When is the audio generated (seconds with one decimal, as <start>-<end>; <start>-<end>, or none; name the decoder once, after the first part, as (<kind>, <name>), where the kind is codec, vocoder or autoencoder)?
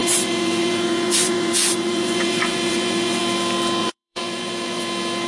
0.0-3.2 (vocoder, Vocos); 3.8-4.8